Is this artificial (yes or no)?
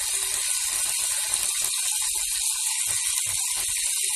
no